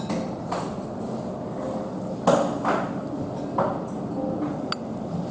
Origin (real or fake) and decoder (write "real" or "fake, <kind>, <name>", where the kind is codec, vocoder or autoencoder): real